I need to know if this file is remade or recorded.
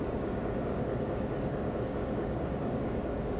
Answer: remade